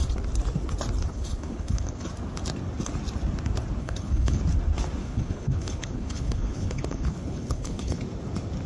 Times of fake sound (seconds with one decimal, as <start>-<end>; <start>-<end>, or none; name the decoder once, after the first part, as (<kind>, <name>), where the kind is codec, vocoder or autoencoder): 1.1-2.1 (codec, HILCodec); 3.8-4.4; 5.0-8.0